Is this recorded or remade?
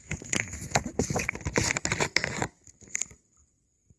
recorded